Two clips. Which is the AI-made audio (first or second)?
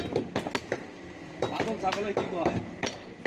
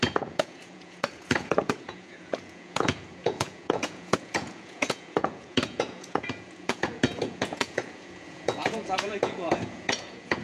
second